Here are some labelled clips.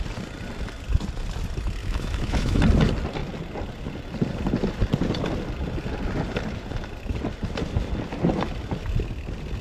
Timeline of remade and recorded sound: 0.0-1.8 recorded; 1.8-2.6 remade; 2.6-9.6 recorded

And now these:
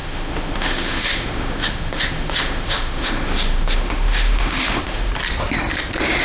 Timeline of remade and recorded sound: 0.0-5.1 remade; 5.1-6.2 recorded

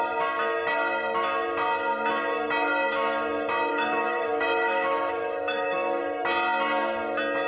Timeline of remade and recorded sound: 0.0-3.7 recorded; 3.7-6.0 remade; 6.0-7.5 recorded

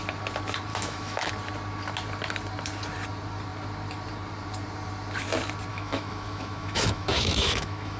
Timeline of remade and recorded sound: 0.0-0.7 recorded; 0.7-1.3 remade; 1.3-5.7 recorded; 5.7-8.0 remade